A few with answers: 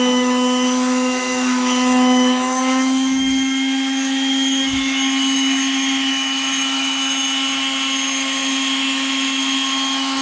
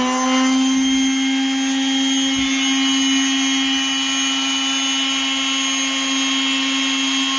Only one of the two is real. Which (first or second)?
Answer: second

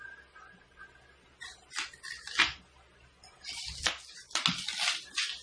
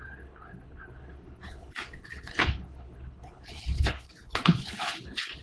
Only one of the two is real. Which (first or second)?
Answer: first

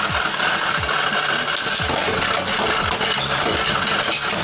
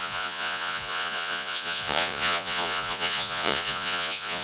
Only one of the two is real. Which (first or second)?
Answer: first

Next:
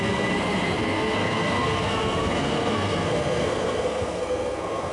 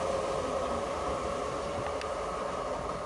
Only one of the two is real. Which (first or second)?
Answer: second